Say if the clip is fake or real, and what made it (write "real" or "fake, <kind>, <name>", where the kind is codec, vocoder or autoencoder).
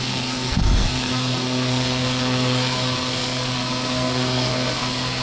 fake, codec, SNAC